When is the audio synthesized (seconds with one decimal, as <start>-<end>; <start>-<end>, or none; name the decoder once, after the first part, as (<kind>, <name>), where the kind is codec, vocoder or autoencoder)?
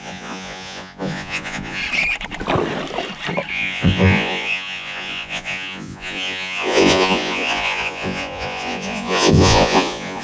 0.0-1.8 (vocoder, Vocos); 3.5-10.2